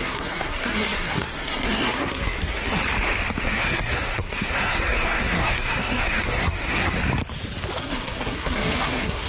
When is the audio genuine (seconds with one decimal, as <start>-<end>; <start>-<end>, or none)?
2.8-3.4; 7.0-7.8